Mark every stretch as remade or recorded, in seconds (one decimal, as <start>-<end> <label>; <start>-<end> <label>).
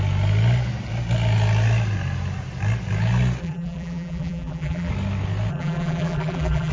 0.0-3.4 recorded; 3.4-4.9 remade; 4.9-5.5 recorded; 5.5-6.7 remade